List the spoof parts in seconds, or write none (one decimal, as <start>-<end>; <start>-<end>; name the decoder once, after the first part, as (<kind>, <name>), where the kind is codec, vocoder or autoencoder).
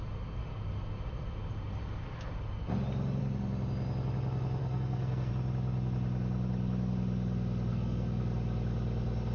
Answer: 4.6-5.3 (codec, SNAC); 7.7-8.2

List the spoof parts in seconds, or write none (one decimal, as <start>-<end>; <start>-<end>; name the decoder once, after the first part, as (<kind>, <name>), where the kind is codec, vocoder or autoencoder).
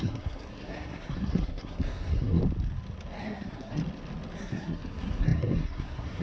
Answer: 0.0-2.4 (codec, SNAC); 3.2-3.8; 4.4-6.2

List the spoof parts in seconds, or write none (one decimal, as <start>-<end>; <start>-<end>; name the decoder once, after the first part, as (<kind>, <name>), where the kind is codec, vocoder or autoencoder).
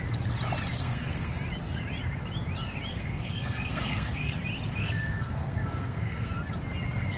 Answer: 0.8-1.3 (codec, SNAC); 2.9-4.3; 4.8-6.3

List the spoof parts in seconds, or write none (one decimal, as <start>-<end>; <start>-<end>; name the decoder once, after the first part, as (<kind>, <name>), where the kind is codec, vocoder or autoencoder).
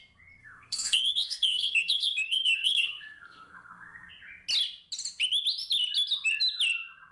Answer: 0.4-4.1 (codec, SNAC)